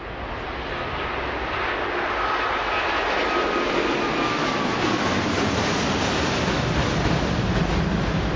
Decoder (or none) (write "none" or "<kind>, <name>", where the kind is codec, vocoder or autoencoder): none